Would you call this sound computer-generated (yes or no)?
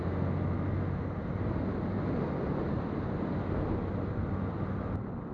no